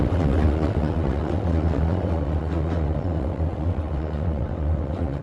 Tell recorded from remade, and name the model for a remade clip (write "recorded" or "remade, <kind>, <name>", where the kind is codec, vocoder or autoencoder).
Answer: remade, vocoder, WaveNeXt